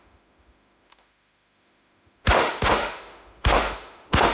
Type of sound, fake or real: fake